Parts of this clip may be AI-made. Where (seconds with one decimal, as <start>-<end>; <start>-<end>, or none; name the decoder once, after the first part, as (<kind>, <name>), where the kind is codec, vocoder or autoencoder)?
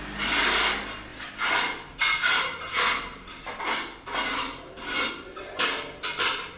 none